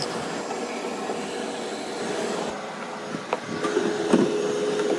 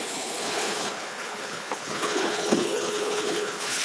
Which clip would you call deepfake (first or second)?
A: second